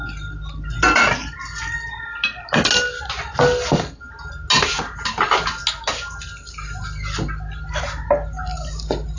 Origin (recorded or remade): recorded